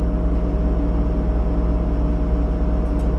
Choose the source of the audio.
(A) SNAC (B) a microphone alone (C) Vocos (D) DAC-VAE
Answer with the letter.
B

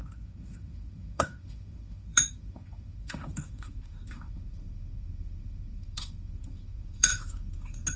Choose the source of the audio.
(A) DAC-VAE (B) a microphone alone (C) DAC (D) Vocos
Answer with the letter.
A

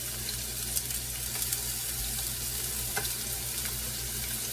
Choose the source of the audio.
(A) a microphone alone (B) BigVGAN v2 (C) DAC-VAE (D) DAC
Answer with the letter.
A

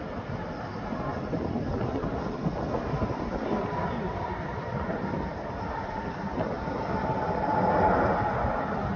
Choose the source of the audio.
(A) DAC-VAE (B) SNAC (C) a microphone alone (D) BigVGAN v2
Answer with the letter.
C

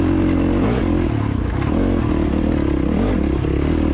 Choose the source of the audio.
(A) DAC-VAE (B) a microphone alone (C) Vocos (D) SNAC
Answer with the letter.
B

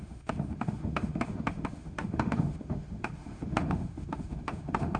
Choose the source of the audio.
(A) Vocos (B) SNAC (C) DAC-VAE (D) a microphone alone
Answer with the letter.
C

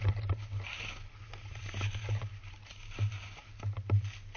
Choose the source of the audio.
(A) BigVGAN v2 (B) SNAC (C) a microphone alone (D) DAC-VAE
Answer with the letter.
C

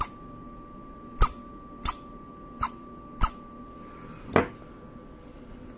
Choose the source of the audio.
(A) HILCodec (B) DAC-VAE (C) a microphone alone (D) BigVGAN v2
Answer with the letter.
C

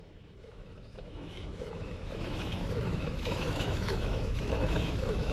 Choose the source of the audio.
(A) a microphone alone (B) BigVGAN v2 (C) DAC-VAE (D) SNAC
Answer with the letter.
C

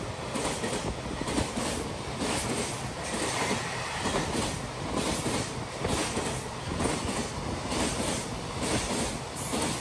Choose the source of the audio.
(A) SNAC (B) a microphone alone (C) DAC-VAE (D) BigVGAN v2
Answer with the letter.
B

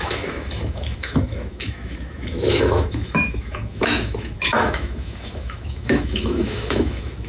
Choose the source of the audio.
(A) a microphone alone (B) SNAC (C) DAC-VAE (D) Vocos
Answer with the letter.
C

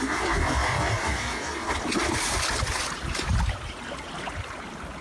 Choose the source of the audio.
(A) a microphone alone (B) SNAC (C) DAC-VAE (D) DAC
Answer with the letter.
A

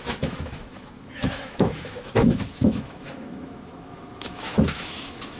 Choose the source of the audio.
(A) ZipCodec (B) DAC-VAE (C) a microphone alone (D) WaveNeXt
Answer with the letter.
B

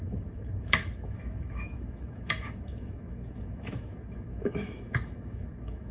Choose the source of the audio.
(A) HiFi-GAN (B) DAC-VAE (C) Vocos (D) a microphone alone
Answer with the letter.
B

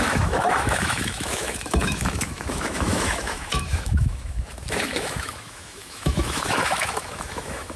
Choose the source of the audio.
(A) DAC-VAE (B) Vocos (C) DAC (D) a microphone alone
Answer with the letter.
A